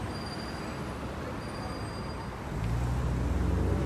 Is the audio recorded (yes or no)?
yes